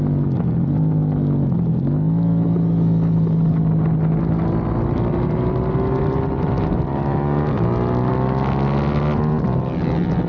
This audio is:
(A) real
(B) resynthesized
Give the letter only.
A